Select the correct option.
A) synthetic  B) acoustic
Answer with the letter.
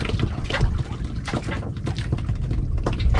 B